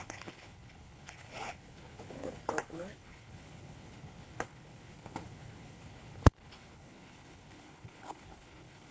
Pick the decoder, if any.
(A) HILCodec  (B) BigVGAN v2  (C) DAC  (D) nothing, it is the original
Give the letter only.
A